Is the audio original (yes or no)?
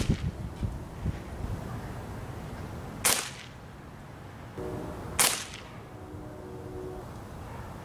yes